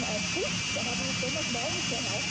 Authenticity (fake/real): real